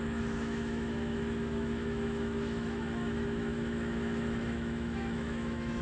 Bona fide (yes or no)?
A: no